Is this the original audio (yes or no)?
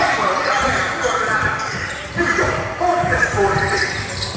no